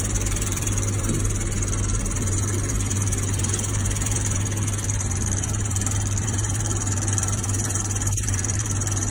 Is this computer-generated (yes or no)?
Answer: yes